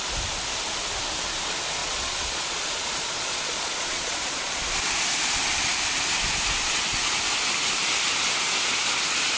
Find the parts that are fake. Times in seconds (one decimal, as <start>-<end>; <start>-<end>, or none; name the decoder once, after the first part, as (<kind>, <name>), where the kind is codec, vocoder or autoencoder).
1.8-4.6 (vocoder, Vocos)